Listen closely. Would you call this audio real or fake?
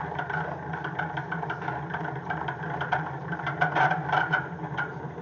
fake